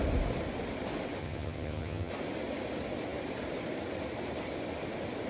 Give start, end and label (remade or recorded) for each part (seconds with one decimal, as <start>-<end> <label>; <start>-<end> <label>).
0.0-1.2 recorded; 1.2-2.1 remade; 2.1-5.3 recorded